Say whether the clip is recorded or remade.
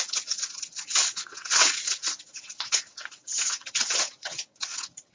remade